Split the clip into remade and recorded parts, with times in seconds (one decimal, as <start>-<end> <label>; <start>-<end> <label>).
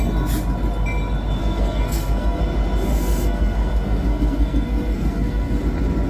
0.0-1.4 recorded; 1.4-2.4 remade; 2.4-2.9 recorded; 2.9-5.6 remade; 5.6-6.1 recorded